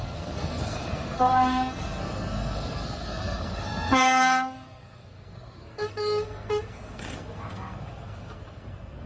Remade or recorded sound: remade